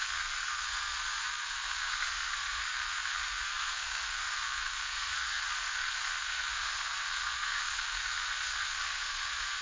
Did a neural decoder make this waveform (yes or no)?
yes